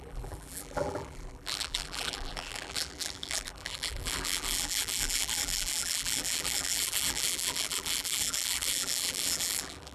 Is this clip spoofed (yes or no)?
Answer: yes